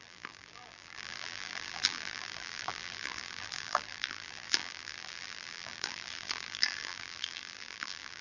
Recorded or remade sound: remade